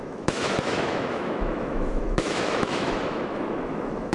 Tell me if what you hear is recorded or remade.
remade